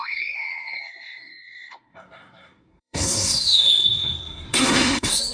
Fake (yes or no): yes